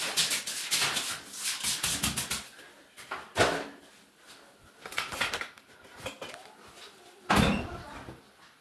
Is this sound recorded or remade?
recorded